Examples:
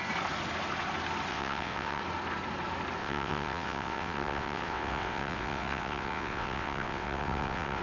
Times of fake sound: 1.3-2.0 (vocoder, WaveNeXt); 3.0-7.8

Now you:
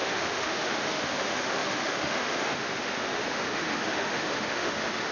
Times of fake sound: 0.0-5.1 (autoencoder, DAC-VAE)

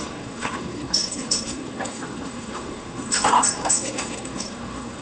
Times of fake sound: 0.0-5.0 (codec, SNAC)

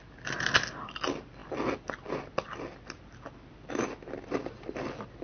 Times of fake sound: none